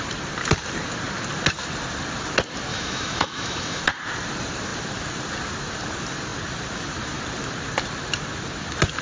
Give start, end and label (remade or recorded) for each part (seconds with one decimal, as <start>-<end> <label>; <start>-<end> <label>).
0.0-2.7 recorded; 2.7-3.8 remade; 3.8-9.0 recorded